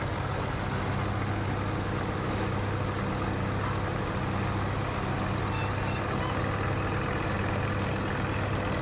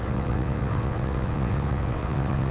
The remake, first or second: second